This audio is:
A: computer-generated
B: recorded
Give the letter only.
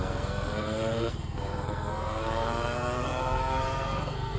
A